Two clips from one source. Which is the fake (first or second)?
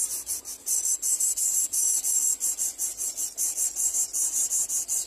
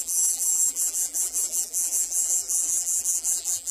second